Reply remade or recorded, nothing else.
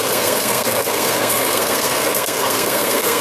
remade